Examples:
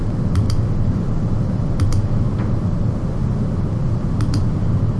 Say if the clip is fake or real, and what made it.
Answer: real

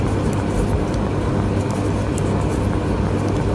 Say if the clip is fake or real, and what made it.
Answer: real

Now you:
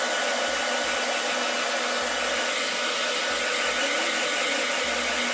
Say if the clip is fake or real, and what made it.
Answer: real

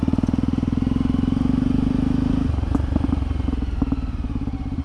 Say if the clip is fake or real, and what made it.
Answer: fake, vocoder, BigVGAN v2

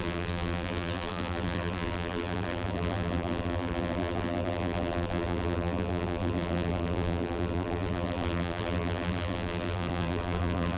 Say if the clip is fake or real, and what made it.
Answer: fake, vocoder, BigVGAN v2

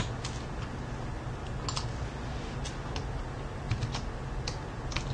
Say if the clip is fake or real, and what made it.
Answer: real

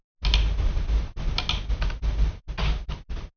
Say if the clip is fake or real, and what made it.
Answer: real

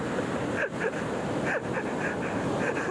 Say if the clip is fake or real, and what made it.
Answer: real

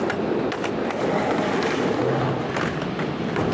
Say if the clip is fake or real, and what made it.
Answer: real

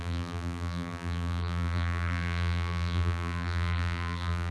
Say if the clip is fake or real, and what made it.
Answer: fake, vocoder, BigVGAN v2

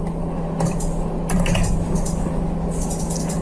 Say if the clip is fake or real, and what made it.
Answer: real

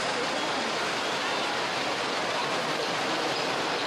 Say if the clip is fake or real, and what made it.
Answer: real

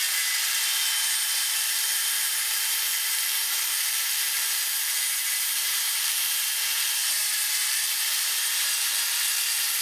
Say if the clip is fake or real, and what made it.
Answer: fake, vocoder, BigVGAN v2